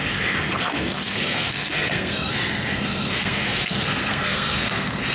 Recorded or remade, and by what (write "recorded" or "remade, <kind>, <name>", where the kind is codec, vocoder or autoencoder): remade, codec, SNAC